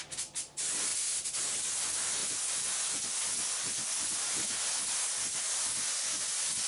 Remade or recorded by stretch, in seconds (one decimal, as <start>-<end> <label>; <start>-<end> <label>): 0.0-2.2 remade; 2.2-6.2 recorded; 6.2-6.7 remade